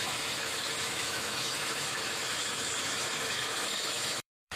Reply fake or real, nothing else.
fake